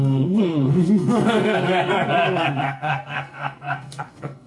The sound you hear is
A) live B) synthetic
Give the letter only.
B